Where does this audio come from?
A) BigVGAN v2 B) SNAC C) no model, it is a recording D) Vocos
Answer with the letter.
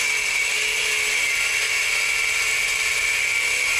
C